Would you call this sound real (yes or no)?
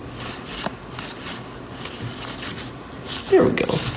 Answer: yes